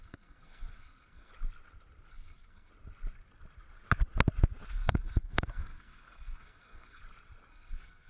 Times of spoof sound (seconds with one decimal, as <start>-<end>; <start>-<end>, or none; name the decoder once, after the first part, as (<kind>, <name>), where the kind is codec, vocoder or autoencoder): 0.0-1.3 (codec, SNAC); 2.1-2.7; 4.7-7.0; 7.5-8.1